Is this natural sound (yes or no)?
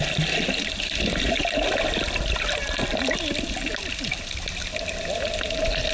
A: yes